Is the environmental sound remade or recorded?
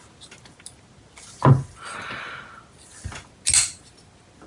recorded